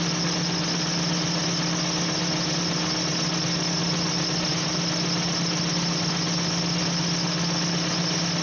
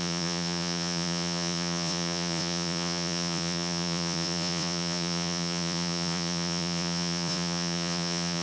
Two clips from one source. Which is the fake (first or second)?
second